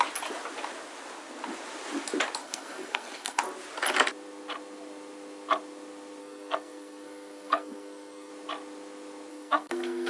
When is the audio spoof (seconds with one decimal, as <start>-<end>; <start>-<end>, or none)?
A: 2.4-3.4; 6.2-8.3; 9.3-10.1